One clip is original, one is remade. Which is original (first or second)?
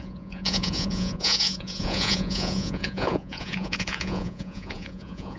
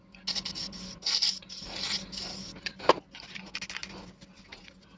second